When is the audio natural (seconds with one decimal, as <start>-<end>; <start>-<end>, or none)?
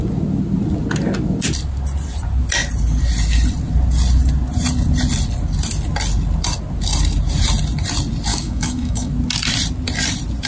0.0-8.3; 9.1-10.5